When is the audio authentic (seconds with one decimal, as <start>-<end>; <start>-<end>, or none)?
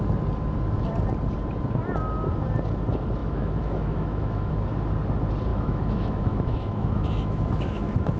0.0-3.2; 4.5-5.5